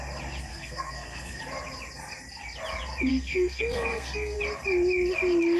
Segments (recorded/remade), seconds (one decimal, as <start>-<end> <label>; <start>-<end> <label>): 0.0-0.5 recorded; 0.5-1.4 remade; 1.4-3.1 recorded; 3.1-4.4 remade; 4.4-5.6 recorded